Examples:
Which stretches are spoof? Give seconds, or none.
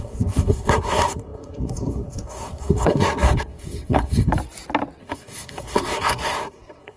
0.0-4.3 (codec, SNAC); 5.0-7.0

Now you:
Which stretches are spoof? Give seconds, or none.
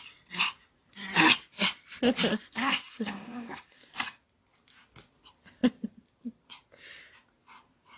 2.3-3.8 (codec, SNAC)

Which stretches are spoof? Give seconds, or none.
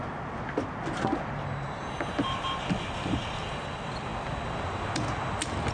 none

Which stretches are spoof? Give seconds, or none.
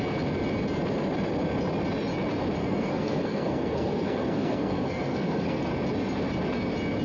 2.6-5.6 (codec, SNAC)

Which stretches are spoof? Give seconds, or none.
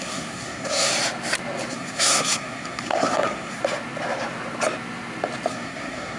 0.0-0.9 (codec, SNAC); 1.7-3.6; 5.5-6.2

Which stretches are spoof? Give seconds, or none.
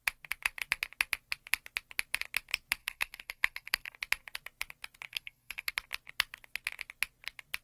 2.8-3.9 (codec, SNAC); 5.1-5.7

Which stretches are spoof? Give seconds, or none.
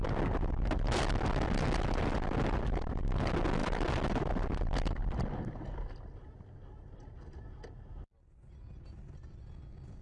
none